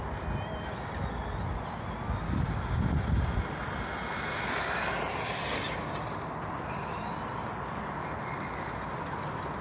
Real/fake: real